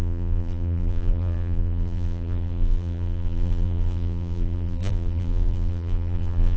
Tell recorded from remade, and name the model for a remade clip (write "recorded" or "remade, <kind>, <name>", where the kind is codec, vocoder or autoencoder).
remade, vocoder, BigVGAN v2